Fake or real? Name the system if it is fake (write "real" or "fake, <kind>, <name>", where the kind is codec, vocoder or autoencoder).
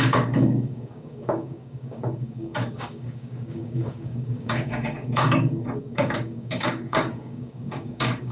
fake, codec, DAC